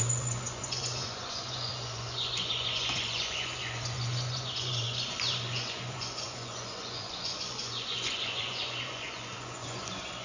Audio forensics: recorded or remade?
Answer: remade